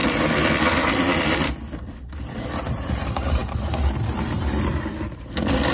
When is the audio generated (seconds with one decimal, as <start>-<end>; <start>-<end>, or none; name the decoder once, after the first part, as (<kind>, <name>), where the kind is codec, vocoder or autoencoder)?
0.0-3.4 (vocoder, BigVGAN v2); 4.2-5.7